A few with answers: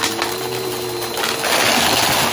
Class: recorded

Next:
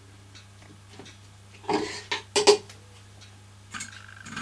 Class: recorded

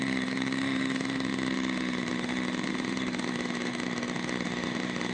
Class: remade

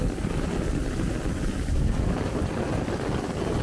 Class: recorded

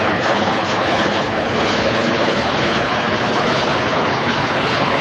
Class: remade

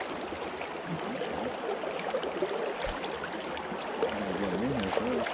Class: recorded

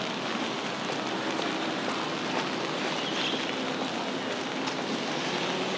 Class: recorded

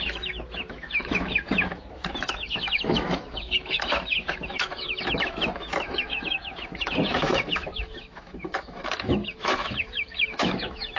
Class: remade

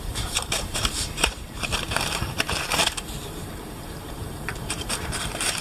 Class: remade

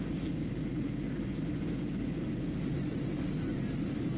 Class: recorded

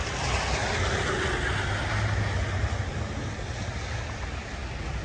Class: recorded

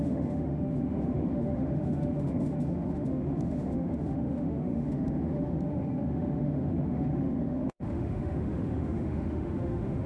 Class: remade